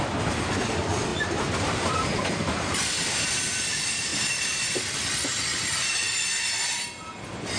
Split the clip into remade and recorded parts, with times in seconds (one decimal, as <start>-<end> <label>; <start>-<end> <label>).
0.0-1.1 recorded; 1.1-2.2 remade; 2.2-5.5 recorded; 5.5-6.9 remade; 6.9-7.6 recorded